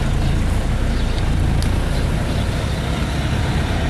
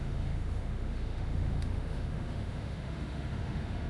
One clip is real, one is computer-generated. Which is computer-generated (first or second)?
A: second